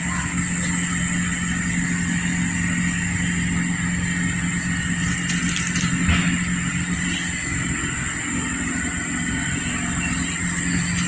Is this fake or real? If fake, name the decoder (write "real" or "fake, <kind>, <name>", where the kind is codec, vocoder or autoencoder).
real